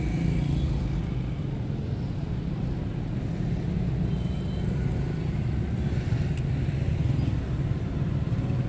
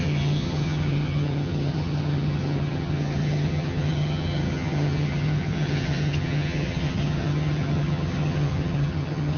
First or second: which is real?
first